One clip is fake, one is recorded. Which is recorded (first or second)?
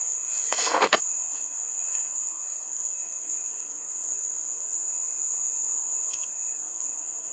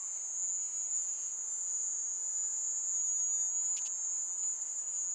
second